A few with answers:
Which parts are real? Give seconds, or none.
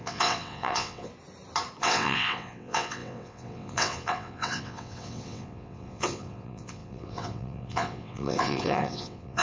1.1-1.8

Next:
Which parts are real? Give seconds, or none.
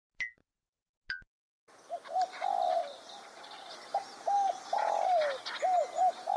0.0-2.8; 3.7-6.4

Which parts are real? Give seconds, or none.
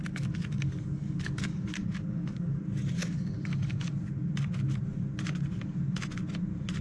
2.6-3.0; 3.9-6.8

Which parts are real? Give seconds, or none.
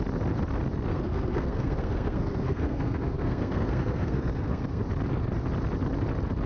0.0-0.9; 4.8-6.5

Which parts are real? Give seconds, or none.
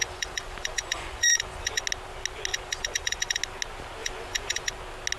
1.8-2.5; 3.4-4.0; 4.7-5.2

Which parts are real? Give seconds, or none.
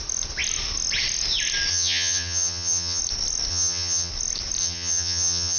0.0-1.7; 3.0-3.5; 4.1-4.6